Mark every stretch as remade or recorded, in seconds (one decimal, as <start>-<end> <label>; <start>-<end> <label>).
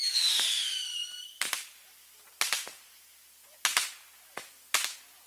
0.0-5.3 recorded